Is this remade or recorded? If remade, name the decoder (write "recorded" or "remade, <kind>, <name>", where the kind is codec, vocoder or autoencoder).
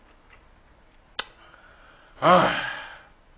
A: recorded